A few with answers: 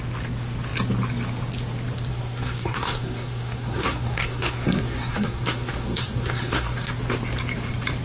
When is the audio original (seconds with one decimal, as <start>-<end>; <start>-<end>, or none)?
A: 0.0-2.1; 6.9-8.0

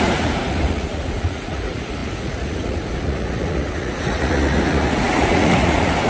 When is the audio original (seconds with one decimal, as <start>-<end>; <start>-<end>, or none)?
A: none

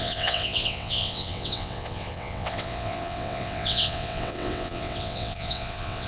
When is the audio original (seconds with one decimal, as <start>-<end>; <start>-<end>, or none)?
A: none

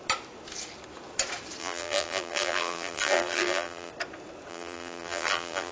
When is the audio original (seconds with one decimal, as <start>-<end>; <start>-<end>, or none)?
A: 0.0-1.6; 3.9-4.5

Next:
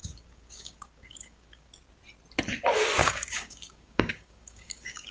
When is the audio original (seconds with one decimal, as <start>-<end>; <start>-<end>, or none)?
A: 1.7-3.0

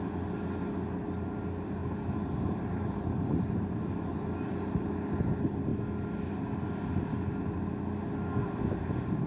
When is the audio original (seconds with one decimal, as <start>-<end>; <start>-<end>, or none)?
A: 0.0-1.8; 4.9-9.3

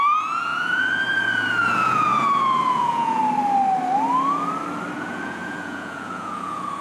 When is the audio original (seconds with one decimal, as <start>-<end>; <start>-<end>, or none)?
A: 3.2-5.0